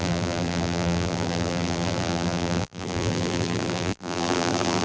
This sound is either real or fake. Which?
fake